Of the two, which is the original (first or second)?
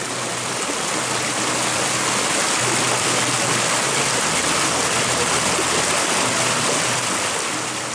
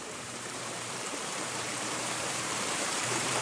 first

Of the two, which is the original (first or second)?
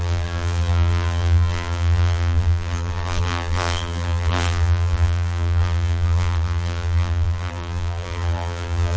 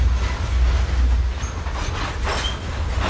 second